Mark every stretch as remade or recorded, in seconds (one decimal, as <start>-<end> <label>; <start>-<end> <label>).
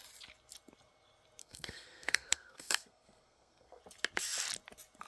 0.0-1.4 recorded; 1.4-3.8 remade; 3.8-5.1 recorded